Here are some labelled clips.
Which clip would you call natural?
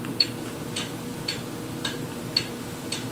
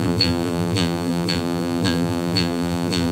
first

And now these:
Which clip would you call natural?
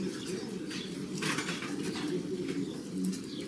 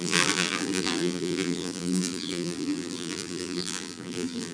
first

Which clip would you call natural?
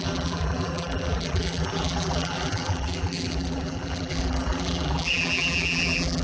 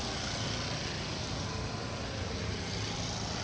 second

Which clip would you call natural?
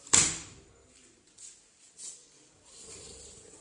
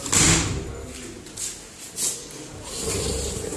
second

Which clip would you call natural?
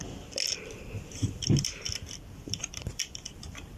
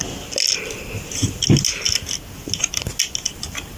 second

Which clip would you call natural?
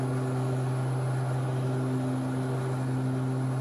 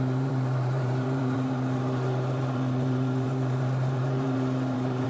first